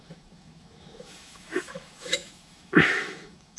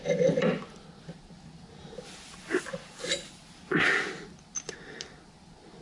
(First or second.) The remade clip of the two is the first